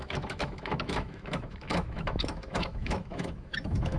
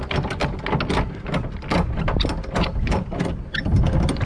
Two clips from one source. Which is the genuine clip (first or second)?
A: second